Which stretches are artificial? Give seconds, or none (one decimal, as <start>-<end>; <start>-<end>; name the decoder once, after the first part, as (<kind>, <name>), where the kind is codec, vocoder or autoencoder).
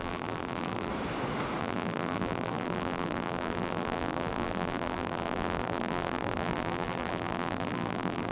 0.0-0.9 (vocoder, BigVGAN v2); 1.6-8.3